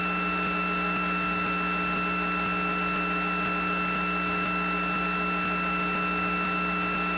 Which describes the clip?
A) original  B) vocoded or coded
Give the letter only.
A